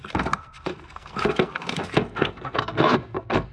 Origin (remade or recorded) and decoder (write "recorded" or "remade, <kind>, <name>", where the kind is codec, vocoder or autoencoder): remade, codec, SNAC